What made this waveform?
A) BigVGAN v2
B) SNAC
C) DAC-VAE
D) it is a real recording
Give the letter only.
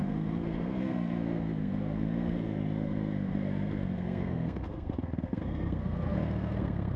B